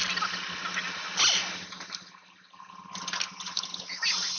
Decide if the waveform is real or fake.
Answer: real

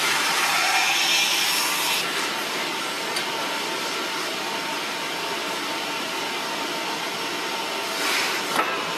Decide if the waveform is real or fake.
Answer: real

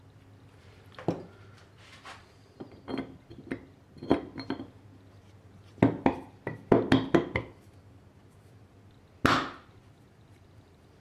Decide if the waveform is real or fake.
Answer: real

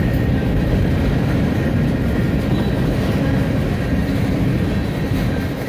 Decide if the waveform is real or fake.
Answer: real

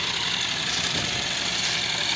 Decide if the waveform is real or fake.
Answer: real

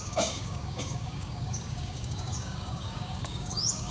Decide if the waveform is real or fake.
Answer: fake